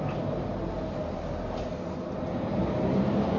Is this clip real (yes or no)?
yes